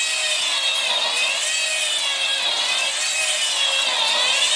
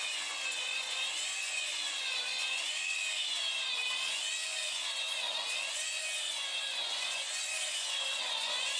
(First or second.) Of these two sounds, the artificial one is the second